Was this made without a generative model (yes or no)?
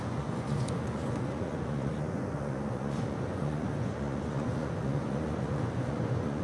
no